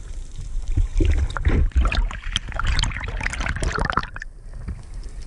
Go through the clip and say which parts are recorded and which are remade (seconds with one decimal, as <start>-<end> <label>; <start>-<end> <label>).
0.0-0.9 remade; 0.9-1.5 recorded; 1.5-4.0 remade; 4.0-4.8 recorded; 4.8-5.3 remade